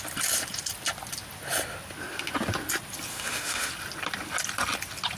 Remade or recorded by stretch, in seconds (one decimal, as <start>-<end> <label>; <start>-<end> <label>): 0.0-3.1 recorded; 3.1-3.7 remade; 3.7-5.2 recorded